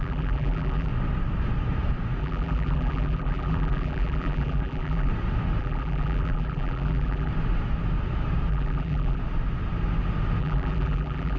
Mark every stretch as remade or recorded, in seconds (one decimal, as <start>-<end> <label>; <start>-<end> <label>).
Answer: 0.0-0.9 remade; 0.9-2.2 recorded; 2.2-5.1 remade; 5.1-5.6 recorded; 5.6-7.3 remade; 7.3-8.5 recorded; 8.5-9.2 remade; 9.2-10.4 recorded; 10.4-11.4 remade